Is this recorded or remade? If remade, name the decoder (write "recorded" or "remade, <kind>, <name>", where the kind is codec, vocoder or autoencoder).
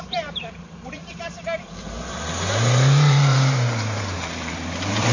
remade, vocoder, BigVGAN v2